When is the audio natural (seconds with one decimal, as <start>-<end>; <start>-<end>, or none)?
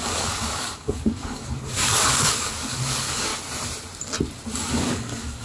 3.3-4.7